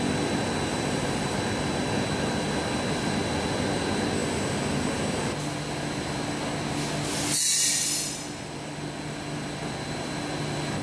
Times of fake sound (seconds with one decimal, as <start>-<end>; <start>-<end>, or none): 0.7-1.4